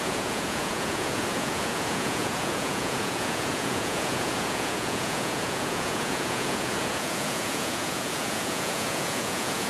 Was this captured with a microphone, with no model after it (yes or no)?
no